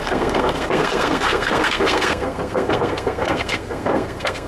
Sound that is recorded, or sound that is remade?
remade